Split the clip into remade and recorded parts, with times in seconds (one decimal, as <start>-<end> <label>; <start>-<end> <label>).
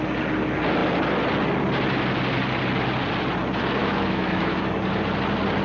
0.0-3.8 recorded; 3.8-4.6 remade; 4.6-5.6 recorded